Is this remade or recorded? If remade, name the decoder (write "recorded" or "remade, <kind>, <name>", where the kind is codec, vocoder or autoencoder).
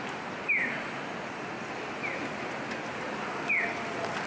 recorded